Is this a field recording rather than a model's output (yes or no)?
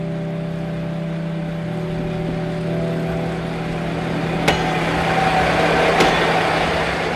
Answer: yes